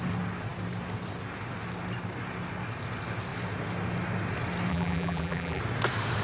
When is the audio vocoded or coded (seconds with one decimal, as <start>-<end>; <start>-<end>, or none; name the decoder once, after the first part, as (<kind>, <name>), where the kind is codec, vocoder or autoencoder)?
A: 4.7-5.6 (vocoder, BigVGAN v2)